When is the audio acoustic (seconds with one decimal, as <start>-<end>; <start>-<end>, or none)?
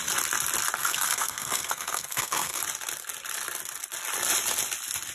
0.0-0.8; 2.6-5.1